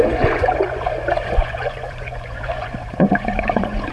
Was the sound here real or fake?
fake